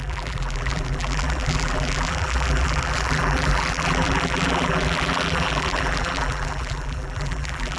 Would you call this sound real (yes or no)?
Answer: no